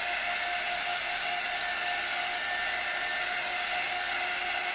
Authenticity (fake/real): real